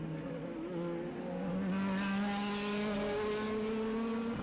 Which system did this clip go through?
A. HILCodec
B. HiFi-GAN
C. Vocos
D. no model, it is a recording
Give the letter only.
D